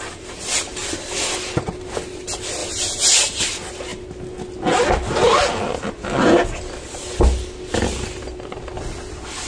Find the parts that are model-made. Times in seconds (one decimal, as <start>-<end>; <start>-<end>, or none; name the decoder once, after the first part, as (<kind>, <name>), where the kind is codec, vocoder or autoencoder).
none

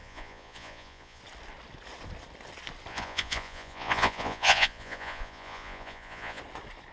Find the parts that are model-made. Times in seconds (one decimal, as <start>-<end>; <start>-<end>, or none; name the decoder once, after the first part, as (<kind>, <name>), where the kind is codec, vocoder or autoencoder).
0.0-1.2 (vocoder, Vocos); 2.9-6.4

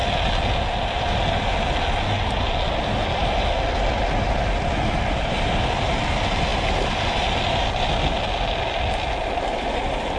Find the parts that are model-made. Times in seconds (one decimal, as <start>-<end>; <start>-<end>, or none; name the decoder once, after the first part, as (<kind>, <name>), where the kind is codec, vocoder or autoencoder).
none